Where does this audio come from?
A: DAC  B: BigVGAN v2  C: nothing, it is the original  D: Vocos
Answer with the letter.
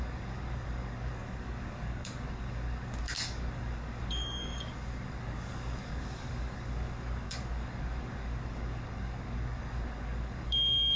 A